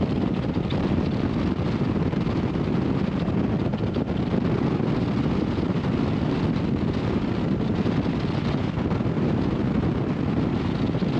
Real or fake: real